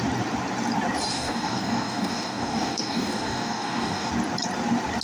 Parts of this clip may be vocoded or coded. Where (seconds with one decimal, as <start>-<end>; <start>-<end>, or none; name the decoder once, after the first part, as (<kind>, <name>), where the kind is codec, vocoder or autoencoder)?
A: 1.1-4.1 (codec, DAC)